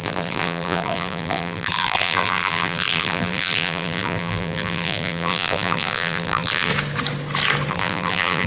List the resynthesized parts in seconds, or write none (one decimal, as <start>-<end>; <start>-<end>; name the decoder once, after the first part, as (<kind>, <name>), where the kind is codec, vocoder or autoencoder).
0.0-6.7 (vocoder, BigVGAN v2); 7.7-8.5